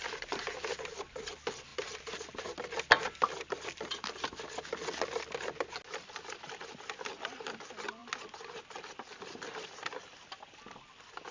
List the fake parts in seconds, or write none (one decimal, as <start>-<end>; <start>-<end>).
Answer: none